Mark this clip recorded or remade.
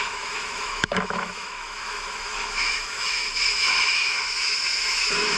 remade